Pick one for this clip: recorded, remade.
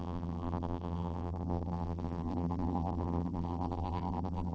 remade